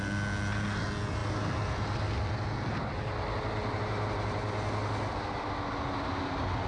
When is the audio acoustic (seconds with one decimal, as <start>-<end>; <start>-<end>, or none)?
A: 0.0-6.7